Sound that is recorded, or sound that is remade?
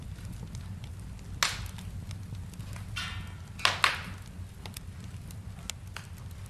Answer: recorded